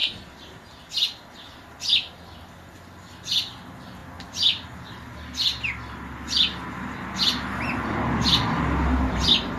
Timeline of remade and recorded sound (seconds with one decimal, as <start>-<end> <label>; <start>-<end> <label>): 0.0-9.6 recorded